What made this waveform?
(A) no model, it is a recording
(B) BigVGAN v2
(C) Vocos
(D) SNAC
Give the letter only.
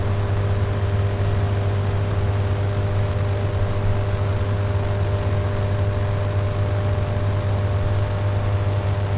A